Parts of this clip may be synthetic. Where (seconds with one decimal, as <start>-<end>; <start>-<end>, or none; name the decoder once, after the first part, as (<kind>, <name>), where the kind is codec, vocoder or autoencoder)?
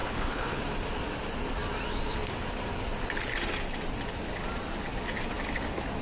0.0-0.6 (codec, HILCodec)